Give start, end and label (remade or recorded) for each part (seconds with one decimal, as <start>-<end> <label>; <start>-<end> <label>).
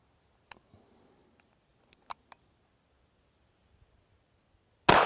0.0-5.1 recorded